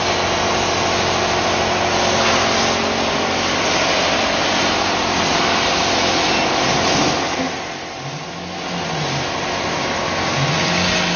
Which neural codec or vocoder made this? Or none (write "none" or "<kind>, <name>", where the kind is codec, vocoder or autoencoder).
none